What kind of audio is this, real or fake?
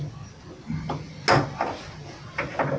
real